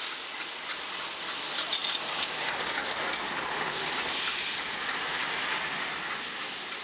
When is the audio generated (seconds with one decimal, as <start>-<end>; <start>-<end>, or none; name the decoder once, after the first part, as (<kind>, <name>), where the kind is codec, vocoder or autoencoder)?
none